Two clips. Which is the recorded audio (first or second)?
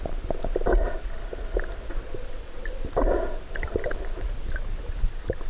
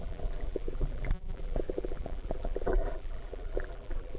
first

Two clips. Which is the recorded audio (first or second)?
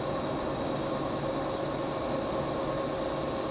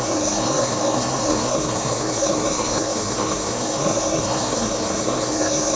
first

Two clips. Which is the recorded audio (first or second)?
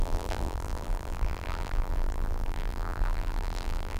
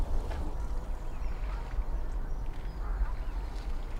second